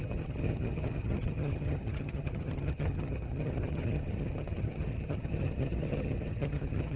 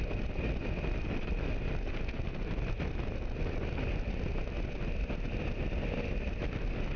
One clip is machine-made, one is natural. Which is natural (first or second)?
second